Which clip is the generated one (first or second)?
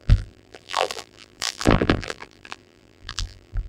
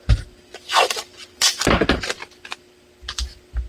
first